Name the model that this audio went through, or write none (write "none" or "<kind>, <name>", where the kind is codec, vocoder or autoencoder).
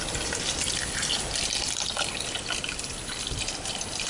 vocoder, BigVGAN v2